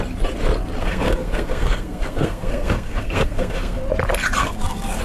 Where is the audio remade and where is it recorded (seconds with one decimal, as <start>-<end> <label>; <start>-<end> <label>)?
0.0-0.8 recorded; 0.8-3.8 remade; 3.8-4.4 recorded; 4.4-5.0 remade